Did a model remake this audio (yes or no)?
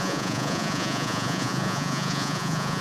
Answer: yes